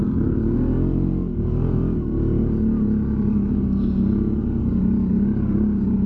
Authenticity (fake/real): real